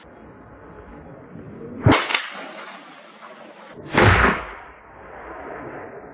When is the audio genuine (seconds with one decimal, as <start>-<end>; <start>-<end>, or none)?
0.0-6.1